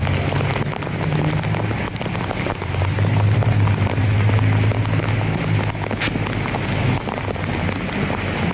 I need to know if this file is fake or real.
real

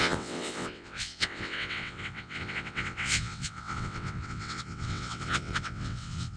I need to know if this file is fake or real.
fake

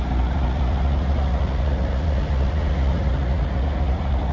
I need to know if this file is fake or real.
fake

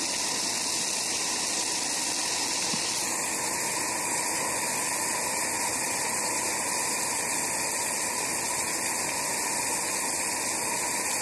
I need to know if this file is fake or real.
real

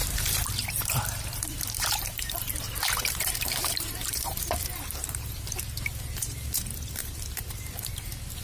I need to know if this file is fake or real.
fake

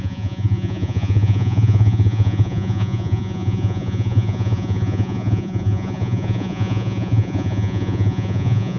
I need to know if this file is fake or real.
fake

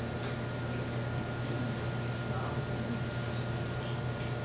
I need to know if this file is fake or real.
real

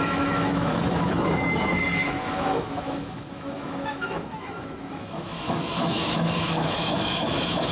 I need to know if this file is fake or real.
fake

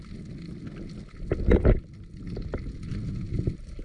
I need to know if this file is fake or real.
real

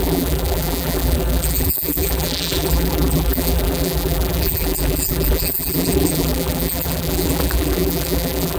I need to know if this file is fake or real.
fake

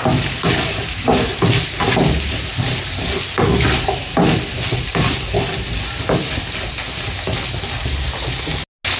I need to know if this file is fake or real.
real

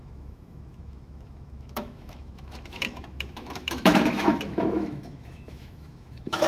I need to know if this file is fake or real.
fake